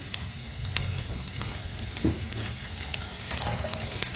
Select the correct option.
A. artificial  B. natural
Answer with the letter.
A